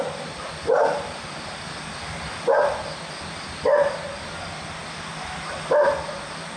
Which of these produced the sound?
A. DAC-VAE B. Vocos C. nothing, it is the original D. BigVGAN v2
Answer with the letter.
C